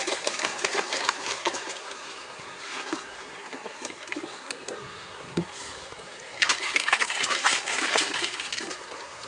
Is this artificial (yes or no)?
yes